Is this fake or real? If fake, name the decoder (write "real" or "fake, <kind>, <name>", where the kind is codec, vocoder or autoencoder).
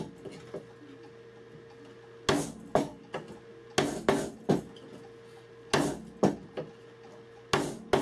real